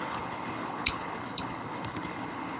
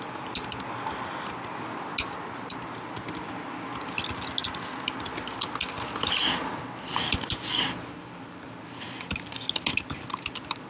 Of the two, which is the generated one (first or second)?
first